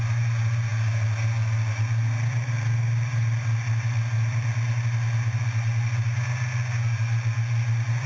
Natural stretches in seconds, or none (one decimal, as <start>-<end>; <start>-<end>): 0.0-8.1